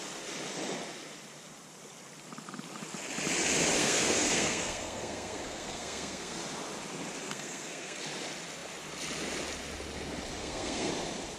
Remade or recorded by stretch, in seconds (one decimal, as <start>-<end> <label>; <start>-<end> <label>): 0.0-3.8 recorded; 3.8-6.4 remade; 6.4-7.2 recorded; 7.2-8.0 remade; 8.0-10.4 recorded; 10.4-10.9 remade; 10.9-11.4 recorded